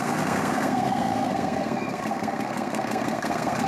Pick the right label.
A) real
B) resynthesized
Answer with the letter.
B